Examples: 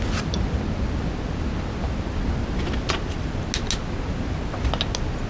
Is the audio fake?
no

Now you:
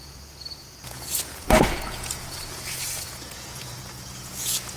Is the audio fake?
yes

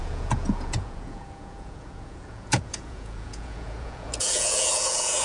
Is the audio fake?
yes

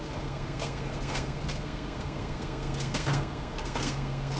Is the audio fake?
yes